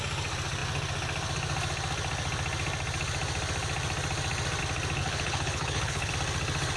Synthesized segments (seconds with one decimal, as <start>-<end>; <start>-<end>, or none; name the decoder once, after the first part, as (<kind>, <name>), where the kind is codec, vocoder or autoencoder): 5.0-6.1 (codec, HILCodec)